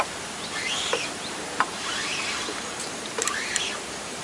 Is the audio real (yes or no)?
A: no